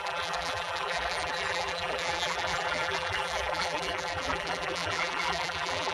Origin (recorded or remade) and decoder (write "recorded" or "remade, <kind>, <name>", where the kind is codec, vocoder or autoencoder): remade, vocoder, BigVGAN v2